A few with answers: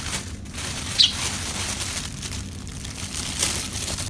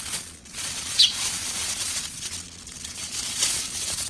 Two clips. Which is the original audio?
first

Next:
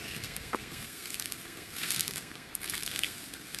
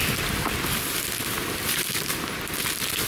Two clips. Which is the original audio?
second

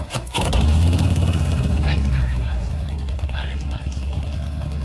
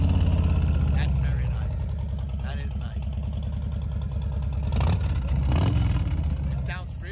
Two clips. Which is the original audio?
second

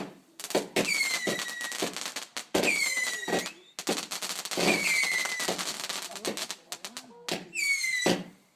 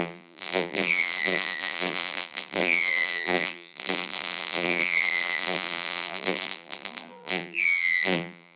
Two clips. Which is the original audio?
first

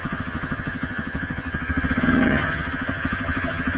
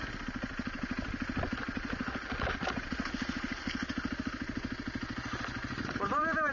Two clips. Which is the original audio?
second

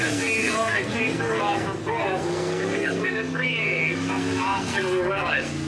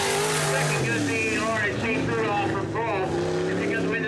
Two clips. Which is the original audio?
second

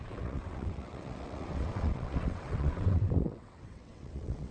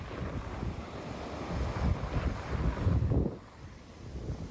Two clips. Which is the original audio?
second